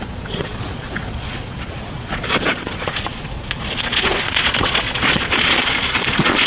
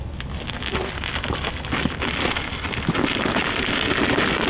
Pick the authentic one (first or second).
second